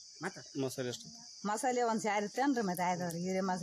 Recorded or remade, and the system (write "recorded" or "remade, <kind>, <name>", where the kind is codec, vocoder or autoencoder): recorded